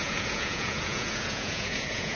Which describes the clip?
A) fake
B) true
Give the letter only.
A